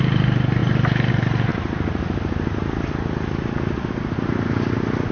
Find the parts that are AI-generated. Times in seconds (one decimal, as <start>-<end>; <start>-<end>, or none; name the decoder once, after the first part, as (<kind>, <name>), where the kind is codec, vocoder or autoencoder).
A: none